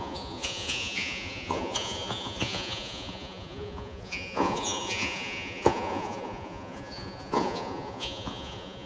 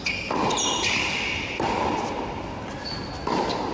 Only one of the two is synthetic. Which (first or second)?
first